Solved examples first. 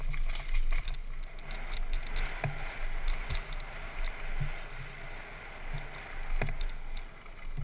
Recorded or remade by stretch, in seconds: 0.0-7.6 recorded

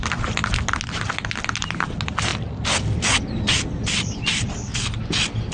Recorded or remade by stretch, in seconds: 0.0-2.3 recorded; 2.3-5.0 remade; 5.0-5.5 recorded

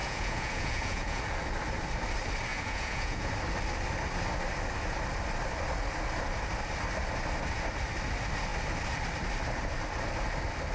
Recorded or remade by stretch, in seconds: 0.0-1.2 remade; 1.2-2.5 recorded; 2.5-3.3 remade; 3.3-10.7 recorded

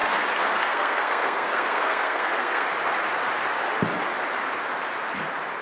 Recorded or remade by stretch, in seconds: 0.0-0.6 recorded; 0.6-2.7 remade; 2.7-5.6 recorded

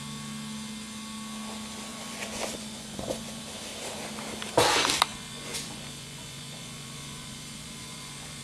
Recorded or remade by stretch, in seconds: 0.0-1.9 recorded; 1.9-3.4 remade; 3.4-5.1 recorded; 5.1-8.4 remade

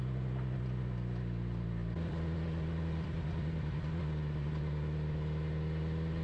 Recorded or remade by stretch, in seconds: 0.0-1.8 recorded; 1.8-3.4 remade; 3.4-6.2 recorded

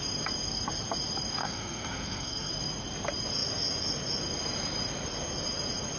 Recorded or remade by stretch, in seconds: 0.0-1.4 recorded; 1.4-2.5 remade; 2.5-6.0 recorded

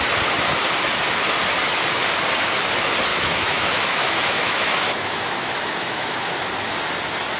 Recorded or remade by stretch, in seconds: 0.0-3.1 recorded; 3.1-6.4 remade; 6.4-7.4 recorded